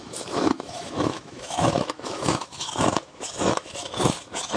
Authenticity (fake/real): fake